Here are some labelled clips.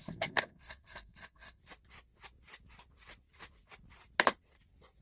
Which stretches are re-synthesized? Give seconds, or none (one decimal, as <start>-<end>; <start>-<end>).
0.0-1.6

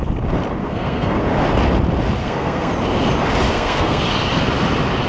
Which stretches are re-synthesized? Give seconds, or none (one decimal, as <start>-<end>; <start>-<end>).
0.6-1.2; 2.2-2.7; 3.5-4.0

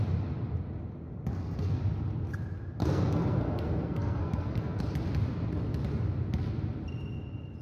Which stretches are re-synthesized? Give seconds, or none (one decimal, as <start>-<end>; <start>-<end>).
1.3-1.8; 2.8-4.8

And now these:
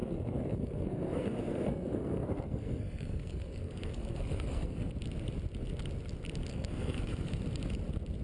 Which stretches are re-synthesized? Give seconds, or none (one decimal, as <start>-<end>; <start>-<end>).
0.0-4.9; 6.5-7.4

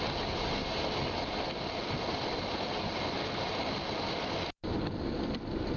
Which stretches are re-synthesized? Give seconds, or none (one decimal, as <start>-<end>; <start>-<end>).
none

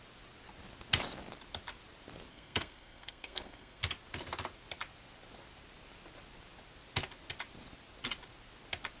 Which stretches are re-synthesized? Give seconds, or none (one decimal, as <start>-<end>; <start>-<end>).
2.3-3.8